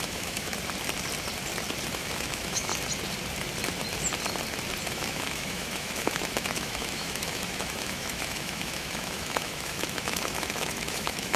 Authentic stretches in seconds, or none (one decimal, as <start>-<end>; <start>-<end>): 0.5-1.9; 2.7-4.9